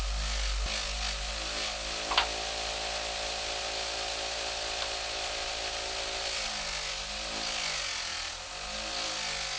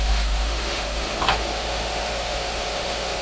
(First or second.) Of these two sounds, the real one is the first